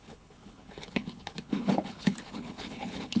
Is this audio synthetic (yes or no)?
yes